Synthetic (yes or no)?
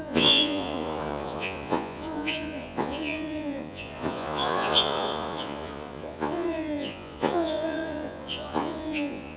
yes